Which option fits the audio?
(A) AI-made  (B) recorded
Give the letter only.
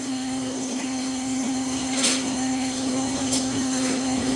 A